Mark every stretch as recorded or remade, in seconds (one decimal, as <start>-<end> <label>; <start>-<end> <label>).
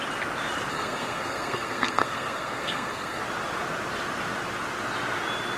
0.0-0.7 recorded; 0.7-3.2 remade; 3.2-5.6 recorded